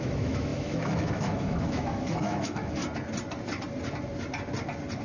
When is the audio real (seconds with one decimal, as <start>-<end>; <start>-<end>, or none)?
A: 2.8-5.0